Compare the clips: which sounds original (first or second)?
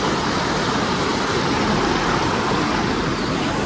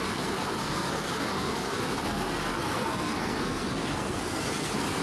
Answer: first